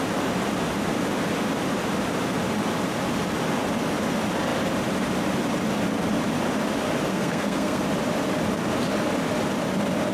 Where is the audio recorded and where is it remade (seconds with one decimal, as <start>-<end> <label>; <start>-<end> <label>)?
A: 0.0-7.1 recorded; 7.1-7.8 remade; 7.8-10.1 recorded